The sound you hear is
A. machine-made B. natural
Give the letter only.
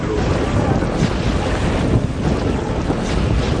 B